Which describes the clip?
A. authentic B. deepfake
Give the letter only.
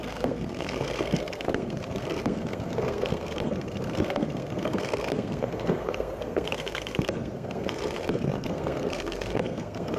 B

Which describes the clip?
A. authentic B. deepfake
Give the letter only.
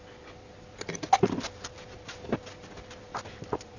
A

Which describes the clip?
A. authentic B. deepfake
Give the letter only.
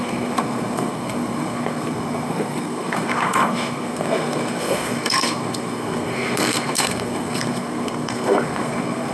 B